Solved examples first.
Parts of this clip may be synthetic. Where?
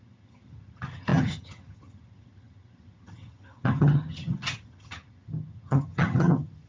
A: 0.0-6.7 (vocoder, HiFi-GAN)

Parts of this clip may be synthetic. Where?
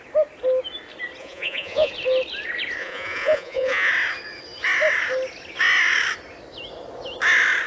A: 1.2-1.9 (vocoder, Vocos); 2.8-3.9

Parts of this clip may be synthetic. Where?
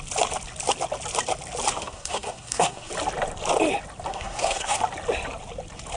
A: 1.8-2.9 (codec, SNAC); 4.1-4.8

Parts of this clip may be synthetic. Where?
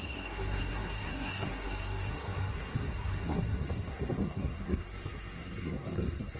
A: 0.0-6.4 (codec, SNAC)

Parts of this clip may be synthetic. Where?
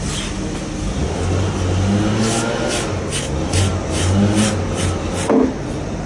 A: none